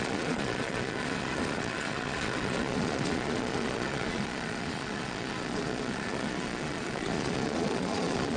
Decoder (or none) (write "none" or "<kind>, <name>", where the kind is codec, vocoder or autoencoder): vocoder, Vocos